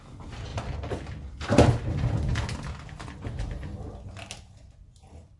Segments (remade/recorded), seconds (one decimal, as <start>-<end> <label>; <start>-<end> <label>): 0.0-5.4 recorded